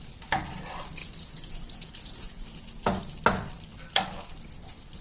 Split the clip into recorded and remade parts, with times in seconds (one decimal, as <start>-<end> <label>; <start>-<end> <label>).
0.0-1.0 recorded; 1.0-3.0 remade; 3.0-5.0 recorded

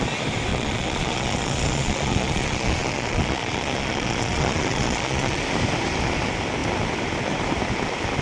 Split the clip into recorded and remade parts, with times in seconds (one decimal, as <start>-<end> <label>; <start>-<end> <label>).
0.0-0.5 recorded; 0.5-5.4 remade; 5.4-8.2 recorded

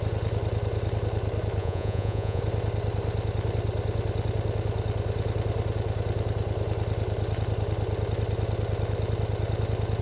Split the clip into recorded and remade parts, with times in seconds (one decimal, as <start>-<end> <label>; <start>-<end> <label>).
0.0-1.6 recorded; 1.6-2.4 remade; 2.4-10.0 recorded